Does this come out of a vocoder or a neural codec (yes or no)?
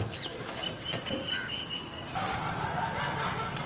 no